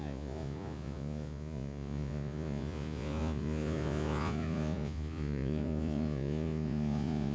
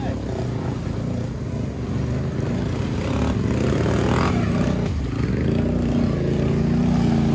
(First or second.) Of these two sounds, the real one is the second